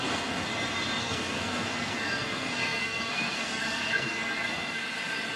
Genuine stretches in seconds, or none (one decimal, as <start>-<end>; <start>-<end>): 0.5-1.0; 4.8-5.4